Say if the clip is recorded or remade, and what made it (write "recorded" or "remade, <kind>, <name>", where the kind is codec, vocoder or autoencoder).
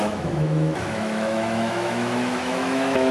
remade, autoencoder, DAC-VAE